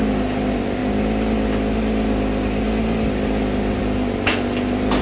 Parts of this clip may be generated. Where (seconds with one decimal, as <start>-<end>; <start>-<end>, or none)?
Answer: none